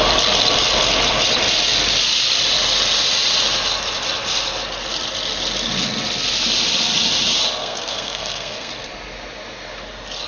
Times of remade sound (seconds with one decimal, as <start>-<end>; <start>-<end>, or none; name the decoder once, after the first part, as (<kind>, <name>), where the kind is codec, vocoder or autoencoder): 7.6-8.7 (codec, SNAC)